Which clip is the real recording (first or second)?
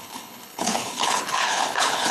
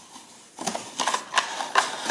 second